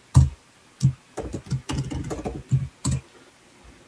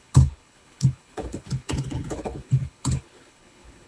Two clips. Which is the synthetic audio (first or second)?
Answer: second